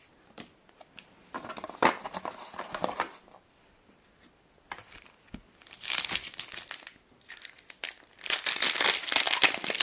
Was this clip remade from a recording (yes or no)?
no